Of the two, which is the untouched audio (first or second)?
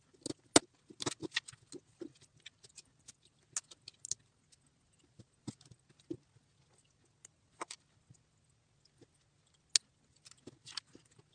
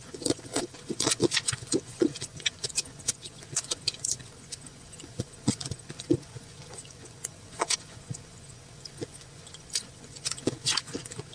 first